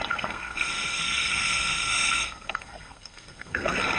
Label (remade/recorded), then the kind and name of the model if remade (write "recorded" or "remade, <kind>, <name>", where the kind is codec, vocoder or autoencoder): remade, codec, SNAC